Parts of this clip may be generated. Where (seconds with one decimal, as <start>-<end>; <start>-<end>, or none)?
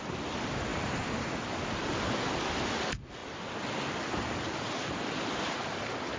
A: none